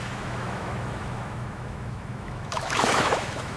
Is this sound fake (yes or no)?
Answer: yes